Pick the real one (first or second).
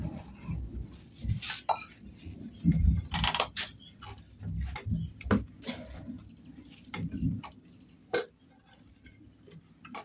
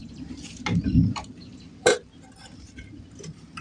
first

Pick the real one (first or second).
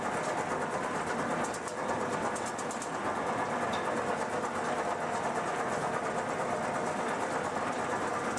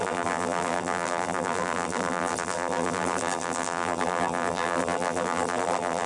first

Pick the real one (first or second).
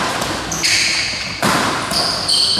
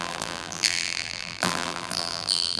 first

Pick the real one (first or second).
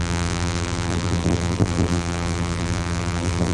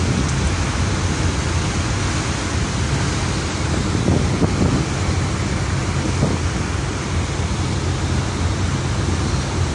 second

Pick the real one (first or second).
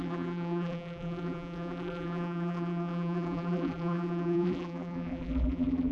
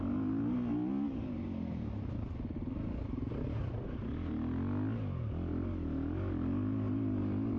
second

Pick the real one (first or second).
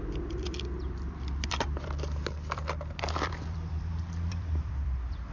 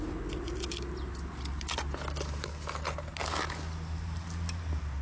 second